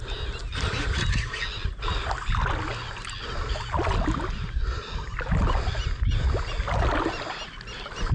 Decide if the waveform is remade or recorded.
recorded